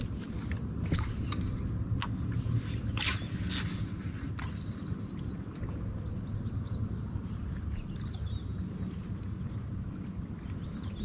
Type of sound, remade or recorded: recorded